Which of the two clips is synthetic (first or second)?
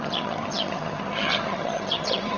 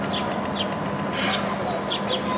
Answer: first